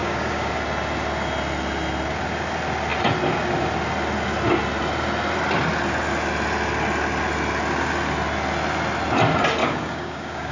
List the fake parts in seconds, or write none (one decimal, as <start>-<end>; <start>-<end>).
0.0-0.5; 9.6-10.5